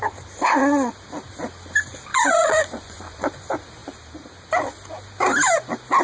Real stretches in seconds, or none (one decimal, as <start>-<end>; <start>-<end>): 0.0-2.1; 3.4-6.0